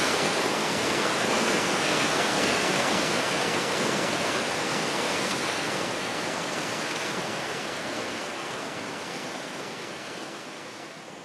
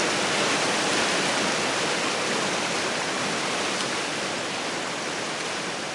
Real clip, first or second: second